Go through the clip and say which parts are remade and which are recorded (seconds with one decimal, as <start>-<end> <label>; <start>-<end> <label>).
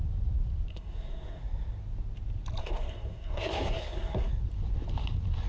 0.0-0.7 recorded; 0.7-1.4 remade; 1.4-2.6 recorded; 2.6-4.3 remade; 4.3-5.5 recorded